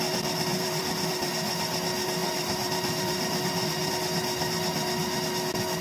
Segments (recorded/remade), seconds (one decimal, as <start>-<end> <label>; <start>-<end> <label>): 0.0-0.5 recorded; 0.5-1.3 remade; 1.3-2.2 recorded; 2.2-3.9 remade; 3.9-5.8 recorded

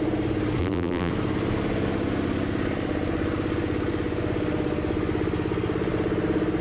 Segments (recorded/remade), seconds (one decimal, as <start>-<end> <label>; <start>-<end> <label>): 0.0-0.6 recorded; 0.6-1.1 remade; 1.1-6.6 recorded

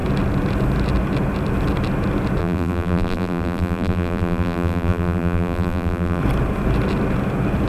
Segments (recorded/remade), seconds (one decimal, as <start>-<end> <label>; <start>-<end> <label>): 0.0-2.4 recorded; 2.4-6.2 remade; 6.2-7.7 recorded